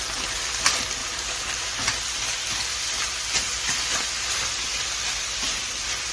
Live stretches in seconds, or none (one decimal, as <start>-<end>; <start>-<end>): 0.0-1.0; 1.8-6.1